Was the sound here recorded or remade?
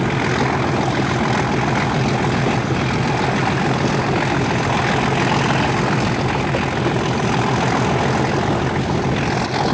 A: recorded